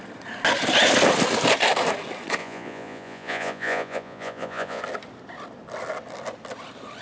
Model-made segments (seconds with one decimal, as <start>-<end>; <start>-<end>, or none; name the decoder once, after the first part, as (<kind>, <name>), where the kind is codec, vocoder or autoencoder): 2.4-4.8 (vocoder, Vocos)